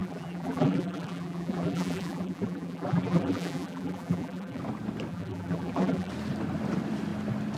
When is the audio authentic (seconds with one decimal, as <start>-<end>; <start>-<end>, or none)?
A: 4.6-5.1; 6.1-7.6